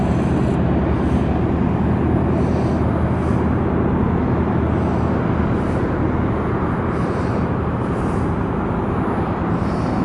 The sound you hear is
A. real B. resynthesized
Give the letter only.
A